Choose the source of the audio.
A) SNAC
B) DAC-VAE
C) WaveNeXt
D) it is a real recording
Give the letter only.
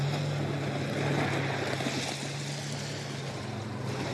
D